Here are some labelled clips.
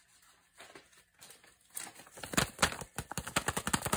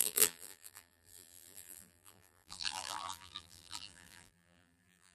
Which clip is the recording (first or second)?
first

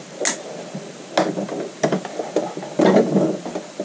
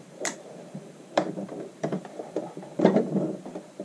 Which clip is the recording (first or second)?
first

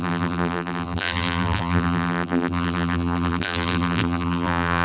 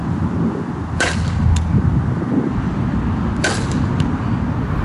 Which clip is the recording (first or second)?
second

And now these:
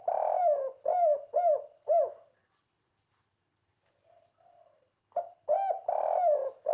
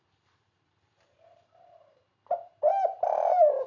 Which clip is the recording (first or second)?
first